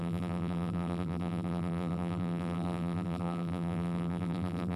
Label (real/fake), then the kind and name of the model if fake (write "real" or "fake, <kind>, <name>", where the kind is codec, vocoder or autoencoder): fake, vocoder, BigVGAN v2